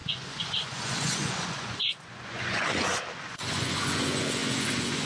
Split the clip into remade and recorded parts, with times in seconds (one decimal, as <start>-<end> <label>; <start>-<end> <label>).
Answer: 0.0-5.1 remade